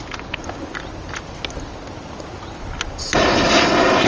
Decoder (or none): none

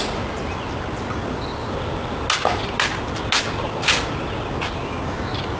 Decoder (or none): none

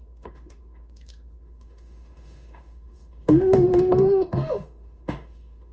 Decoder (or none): autoencoder, DAC-VAE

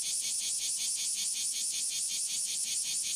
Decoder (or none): none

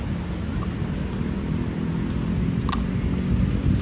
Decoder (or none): none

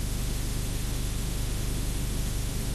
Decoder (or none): autoencoder, DAC-VAE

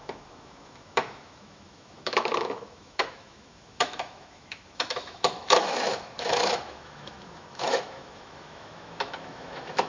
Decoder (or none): autoencoder, DAC-VAE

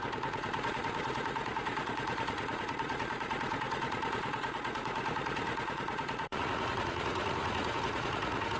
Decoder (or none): vocoder, Vocos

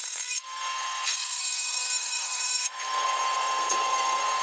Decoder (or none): codec, SNAC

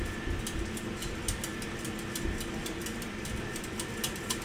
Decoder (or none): none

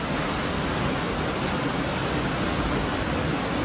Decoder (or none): none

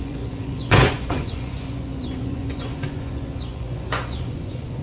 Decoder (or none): vocoder, Vocos